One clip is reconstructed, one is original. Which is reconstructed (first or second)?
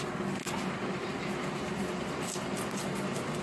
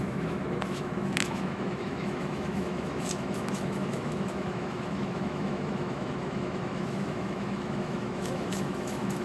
second